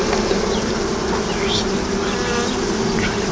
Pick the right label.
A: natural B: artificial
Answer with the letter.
A